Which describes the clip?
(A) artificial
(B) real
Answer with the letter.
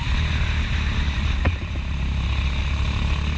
B